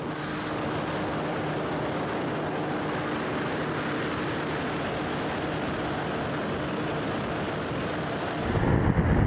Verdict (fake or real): real